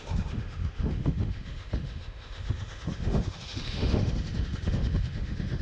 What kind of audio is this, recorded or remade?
remade